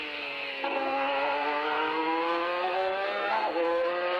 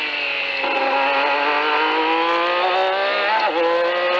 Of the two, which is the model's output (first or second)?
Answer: first